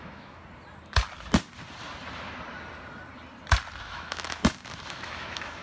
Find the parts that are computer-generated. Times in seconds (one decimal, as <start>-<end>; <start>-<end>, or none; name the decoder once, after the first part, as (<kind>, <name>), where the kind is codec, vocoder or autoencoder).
0.0-0.4 (autoencoder, DAC-VAE); 3.8-4.4; 4.9-5.6